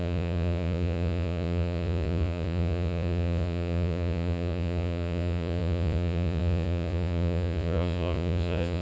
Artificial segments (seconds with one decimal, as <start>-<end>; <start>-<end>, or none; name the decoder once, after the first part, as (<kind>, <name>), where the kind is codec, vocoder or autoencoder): 0.0-8.8 (vocoder, Vocos)